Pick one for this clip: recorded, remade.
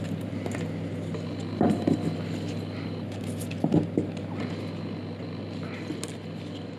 recorded